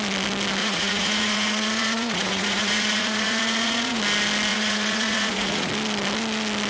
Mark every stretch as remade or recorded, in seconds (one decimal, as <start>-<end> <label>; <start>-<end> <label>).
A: 0.0-0.6 recorded; 0.6-4.0 remade; 4.0-4.5 recorded; 4.5-5.7 remade; 5.7-6.7 recorded